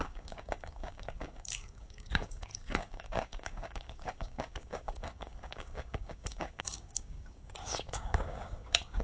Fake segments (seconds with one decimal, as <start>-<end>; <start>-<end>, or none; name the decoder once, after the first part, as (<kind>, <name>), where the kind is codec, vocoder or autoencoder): 0.0-9.0 (codec, DAC)